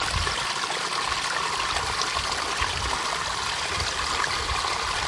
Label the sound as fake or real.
real